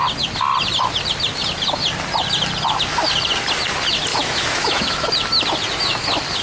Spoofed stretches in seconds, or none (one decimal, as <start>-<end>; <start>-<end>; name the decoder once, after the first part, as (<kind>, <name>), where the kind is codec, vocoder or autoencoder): 4.1-5.1 (autoencoder, DAC-VAE)